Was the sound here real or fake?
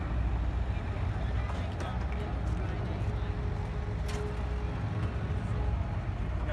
real